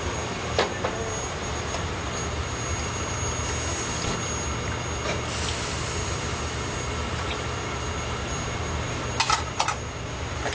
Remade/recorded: recorded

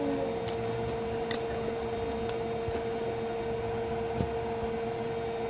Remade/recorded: recorded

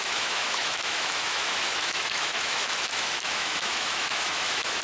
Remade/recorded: remade